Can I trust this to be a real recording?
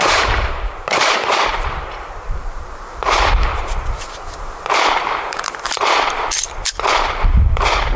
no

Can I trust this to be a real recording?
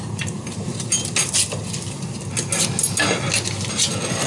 yes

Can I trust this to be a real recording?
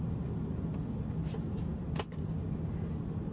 yes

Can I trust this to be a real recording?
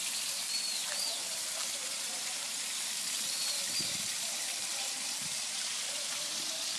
no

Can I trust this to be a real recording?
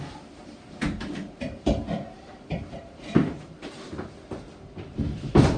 no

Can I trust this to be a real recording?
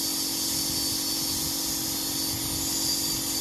yes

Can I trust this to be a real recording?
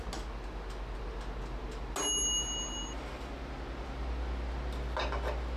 yes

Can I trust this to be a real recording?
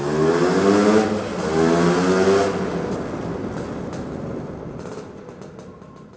yes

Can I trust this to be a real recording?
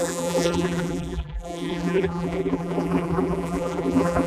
no